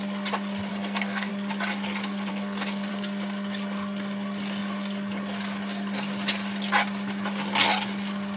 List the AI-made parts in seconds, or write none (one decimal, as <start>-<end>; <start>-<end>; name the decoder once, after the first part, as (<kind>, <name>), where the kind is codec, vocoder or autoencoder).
0.7-1.3 (codec, SNAC); 2.3-2.9